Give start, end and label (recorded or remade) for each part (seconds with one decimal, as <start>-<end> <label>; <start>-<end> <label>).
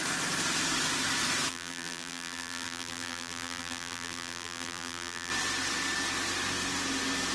0.0-1.5 recorded; 1.5-5.3 remade; 5.3-7.3 recorded